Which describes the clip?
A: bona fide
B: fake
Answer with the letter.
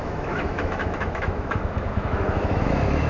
B